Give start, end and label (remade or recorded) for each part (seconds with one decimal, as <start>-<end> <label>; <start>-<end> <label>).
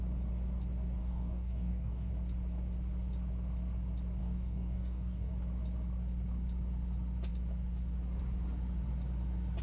0.0-1.0 recorded; 1.0-2.1 remade; 2.1-4.2 recorded; 4.2-5.3 remade; 5.3-9.6 recorded